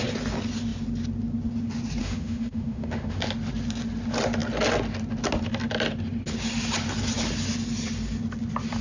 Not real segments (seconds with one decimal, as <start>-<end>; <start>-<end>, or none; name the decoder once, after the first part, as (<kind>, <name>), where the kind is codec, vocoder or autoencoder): 2.0-3.2 (autoencoder, DAC-VAE)